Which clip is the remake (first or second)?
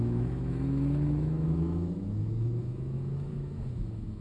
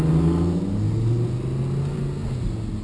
first